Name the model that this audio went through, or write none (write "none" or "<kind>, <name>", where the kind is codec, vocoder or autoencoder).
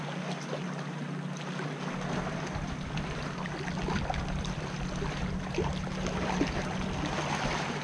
none